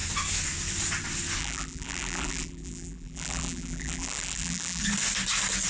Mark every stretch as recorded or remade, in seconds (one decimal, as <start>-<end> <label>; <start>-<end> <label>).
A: 0.0-1.4 recorded; 1.4-4.8 remade; 4.8-5.7 recorded